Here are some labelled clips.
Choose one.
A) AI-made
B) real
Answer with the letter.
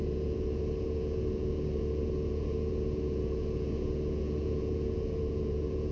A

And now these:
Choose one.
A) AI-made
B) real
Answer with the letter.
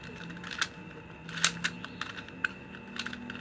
B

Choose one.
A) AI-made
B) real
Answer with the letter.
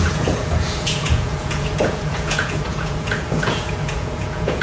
A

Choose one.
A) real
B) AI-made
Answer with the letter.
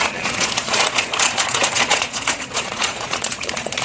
B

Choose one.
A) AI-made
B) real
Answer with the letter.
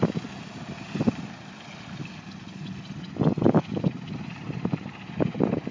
B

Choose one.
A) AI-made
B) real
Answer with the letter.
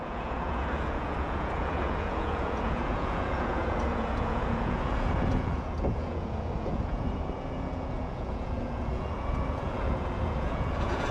A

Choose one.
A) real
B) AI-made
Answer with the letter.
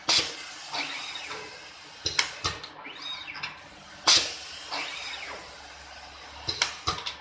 A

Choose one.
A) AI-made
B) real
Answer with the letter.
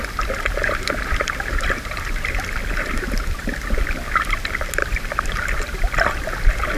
B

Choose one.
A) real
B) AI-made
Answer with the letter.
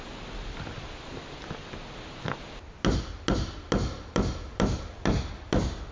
A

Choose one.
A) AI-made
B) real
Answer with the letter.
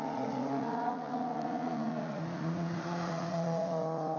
A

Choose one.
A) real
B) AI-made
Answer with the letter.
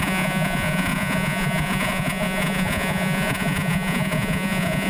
B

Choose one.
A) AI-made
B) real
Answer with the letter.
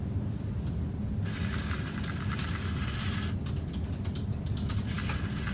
B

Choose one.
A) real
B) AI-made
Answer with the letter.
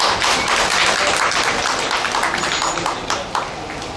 A